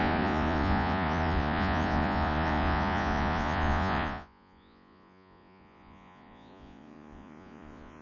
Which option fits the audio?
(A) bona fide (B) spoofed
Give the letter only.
B